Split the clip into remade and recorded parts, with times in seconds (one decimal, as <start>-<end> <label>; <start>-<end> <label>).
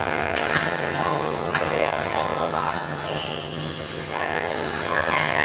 0.0-5.4 remade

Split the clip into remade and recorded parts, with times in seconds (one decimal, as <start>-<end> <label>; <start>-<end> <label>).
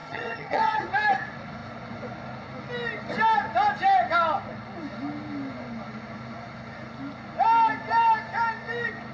0.0-0.8 remade; 0.8-9.1 recorded